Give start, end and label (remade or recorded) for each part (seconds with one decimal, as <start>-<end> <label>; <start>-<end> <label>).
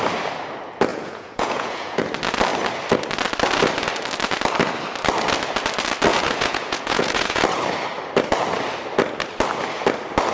0.0-0.9 recorded; 0.9-2.1 remade; 2.1-6.1 recorded; 6.1-7.4 remade; 7.4-10.3 recorded